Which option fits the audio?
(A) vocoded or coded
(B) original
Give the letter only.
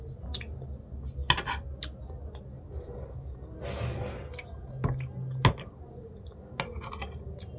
B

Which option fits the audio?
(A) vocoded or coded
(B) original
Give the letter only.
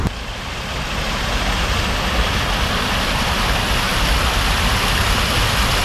B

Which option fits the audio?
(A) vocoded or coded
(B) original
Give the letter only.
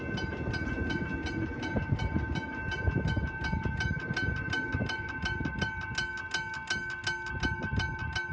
B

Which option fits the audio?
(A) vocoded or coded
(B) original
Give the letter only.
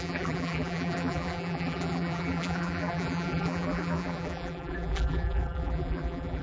A